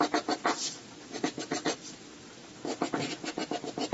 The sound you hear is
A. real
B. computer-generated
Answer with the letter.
A